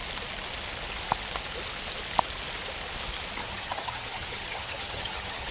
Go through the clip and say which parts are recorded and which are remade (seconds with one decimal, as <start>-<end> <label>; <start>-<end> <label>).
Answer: 0.0-3.4 recorded; 3.4-5.5 remade